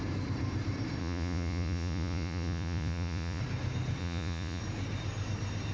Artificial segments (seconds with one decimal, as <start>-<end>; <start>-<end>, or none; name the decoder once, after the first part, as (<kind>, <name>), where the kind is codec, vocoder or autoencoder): 1.0-3.4 (vocoder, Vocos); 4.0-4.6